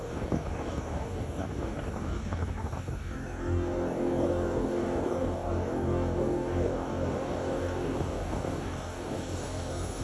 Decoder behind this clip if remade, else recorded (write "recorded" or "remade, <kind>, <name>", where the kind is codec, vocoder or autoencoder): remade, codec, DAC